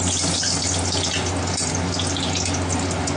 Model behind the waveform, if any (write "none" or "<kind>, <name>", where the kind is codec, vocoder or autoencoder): none